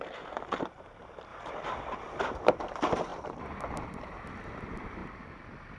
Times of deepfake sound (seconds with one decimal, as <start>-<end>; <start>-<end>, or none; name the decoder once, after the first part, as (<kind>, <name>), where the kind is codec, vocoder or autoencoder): 0.0-5.0 (vocoder, BigVGAN v2)